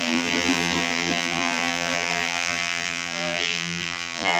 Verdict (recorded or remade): remade